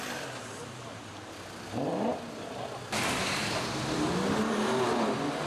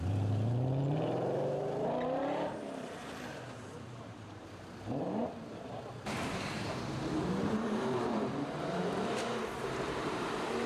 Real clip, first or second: first